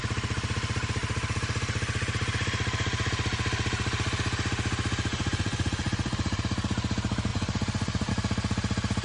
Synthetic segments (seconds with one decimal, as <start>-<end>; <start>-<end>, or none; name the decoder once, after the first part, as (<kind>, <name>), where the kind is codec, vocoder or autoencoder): 5.1-6.4 (vocoder, Vocos); 7.3-8.1